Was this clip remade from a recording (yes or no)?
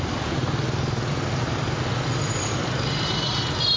no